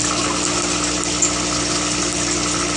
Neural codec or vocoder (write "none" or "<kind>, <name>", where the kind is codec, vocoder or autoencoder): vocoder, BigVGAN v2